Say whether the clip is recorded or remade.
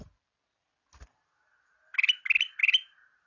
recorded